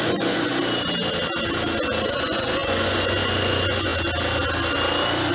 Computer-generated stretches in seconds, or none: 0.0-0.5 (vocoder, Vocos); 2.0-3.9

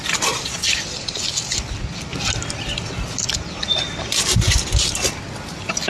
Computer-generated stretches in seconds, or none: none